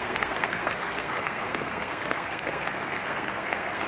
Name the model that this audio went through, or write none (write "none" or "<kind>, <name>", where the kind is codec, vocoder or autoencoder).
codec, SNAC